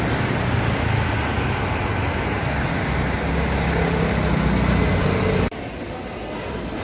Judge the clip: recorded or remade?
recorded